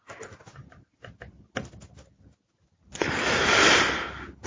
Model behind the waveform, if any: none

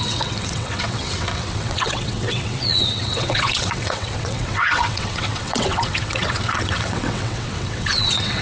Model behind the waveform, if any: vocoder, WaveNeXt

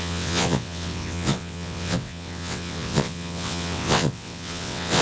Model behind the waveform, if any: vocoder, WaveNeXt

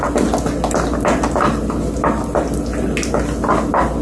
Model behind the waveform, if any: none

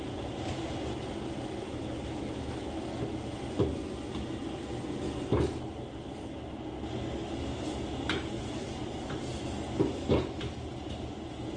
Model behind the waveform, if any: none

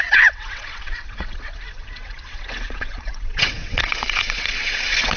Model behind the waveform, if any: vocoder, WaveNeXt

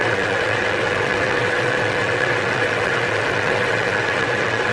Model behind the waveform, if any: vocoder, WaveNeXt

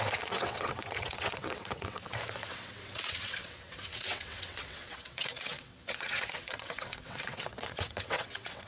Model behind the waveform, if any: vocoder, WaveNeXt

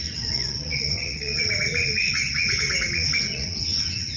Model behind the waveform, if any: vocoder, WaveNeXt